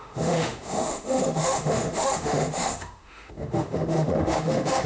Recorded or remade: remade